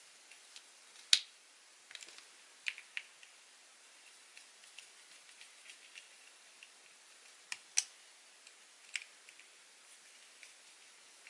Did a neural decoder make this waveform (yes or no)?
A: no